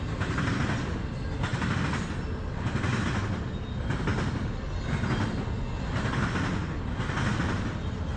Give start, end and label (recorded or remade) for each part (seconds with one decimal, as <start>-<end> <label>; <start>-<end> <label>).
0.0-8.2 recorded